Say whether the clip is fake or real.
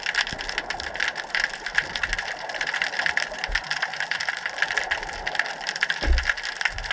real